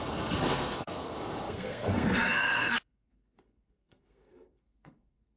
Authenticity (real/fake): fake